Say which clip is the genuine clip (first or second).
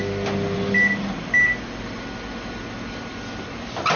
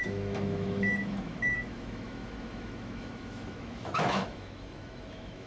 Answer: first